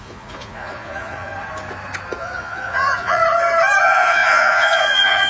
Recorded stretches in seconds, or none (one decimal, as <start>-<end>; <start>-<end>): 1.3-2.2; 3.2-3.8